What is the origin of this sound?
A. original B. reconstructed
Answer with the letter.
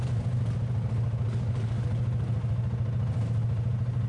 A